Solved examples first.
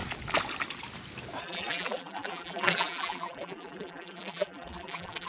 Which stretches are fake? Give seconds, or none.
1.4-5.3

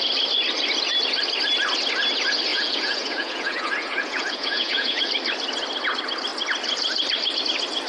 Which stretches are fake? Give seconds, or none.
2.5-5.0

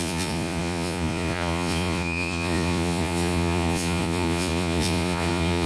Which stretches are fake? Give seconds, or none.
0.0-5.7

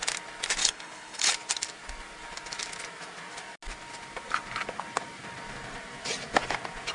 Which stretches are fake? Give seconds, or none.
0.6-1.3

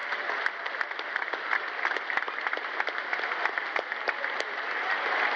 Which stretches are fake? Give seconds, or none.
none